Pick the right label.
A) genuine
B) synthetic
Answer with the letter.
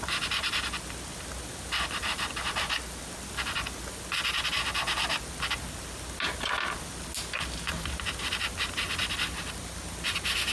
A